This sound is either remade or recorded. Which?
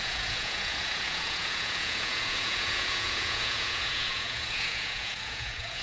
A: remade